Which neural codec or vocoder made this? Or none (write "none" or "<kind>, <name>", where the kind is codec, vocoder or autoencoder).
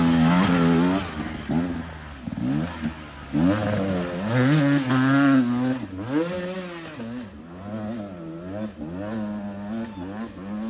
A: none